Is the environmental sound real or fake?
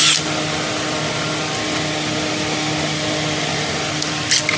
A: real